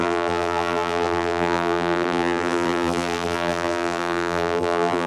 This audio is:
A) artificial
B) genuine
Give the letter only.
A